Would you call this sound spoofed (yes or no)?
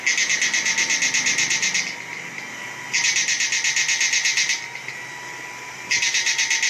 no